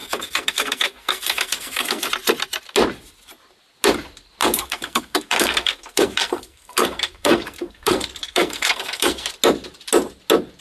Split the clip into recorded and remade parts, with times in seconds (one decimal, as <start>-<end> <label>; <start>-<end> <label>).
0.0-2.1 remade; 2.1-4.4 recorded; 4.4-9.3 remade; 9.3-10.6 recorded